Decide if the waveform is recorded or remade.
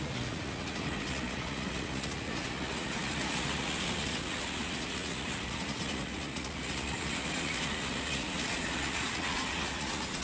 remade